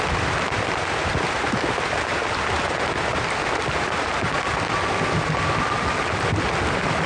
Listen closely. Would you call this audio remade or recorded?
recorded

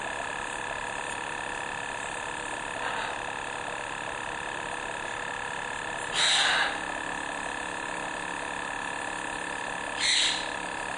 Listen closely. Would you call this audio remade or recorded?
recorded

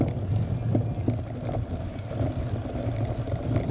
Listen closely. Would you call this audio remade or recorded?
recorded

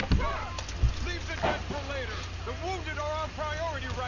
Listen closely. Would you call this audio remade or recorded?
recorded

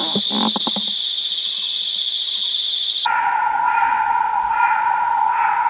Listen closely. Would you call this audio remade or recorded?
recorded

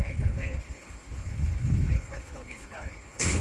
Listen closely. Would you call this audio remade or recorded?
remade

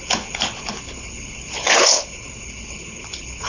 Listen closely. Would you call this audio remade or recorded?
remade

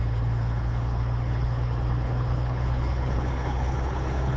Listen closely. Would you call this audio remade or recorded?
remade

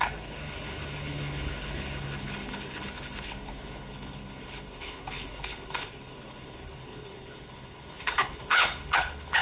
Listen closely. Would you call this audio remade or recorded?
remade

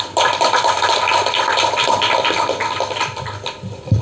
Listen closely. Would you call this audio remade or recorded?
recorded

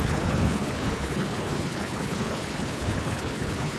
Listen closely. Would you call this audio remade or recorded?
remade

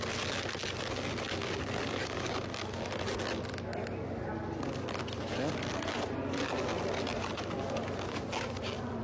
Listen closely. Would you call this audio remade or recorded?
recorded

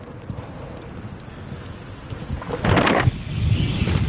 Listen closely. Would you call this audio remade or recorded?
recorded